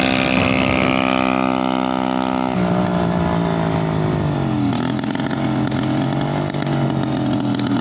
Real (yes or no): yes